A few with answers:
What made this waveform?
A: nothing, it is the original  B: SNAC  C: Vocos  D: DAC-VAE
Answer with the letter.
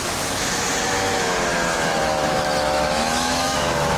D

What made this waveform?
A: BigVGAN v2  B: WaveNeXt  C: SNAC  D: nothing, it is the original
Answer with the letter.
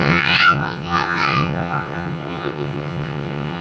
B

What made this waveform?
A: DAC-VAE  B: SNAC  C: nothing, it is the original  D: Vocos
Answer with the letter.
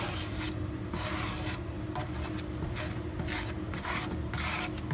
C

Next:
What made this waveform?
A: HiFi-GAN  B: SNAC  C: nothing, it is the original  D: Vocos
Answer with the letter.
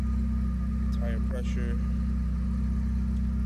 C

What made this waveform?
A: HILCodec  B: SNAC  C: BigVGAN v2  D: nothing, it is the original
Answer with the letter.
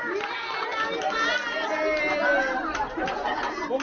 D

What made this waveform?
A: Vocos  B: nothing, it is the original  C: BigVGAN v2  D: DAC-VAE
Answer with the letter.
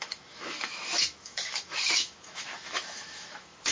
D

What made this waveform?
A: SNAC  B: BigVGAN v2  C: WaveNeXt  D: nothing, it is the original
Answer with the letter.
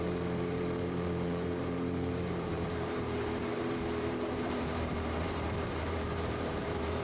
B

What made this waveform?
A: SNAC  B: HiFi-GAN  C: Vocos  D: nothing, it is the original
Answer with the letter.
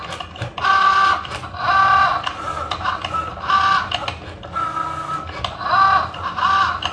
D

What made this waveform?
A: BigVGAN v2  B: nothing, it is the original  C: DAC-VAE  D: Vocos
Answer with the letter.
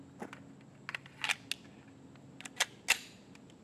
B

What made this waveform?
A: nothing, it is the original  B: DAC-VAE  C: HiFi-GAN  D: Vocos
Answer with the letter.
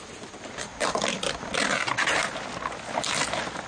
A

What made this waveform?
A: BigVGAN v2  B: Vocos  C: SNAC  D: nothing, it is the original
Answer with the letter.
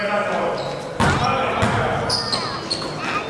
D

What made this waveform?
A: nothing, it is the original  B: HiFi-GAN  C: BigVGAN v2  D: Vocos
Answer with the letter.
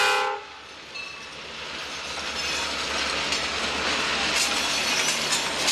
A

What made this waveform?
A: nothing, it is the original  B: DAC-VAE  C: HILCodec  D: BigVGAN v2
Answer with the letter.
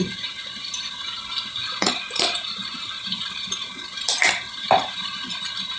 D